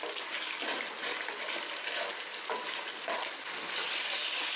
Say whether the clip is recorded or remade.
recorded